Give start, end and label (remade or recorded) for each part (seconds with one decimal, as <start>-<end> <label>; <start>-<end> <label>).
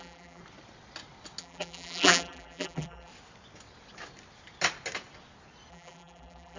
0.0-0.4 remade; 0.4-1.4 recorded; 1.4-3.1 remade; 3.1-5.7 recorded; 5.7-6.6 remade